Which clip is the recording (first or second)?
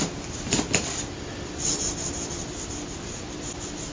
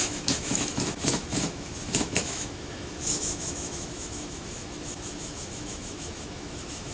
first